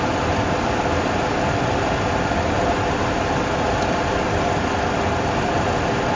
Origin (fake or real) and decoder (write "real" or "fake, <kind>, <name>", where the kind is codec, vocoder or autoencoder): real